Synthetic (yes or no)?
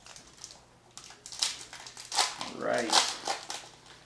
no